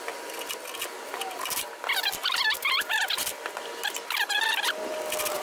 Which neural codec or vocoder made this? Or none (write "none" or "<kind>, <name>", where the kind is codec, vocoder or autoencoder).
none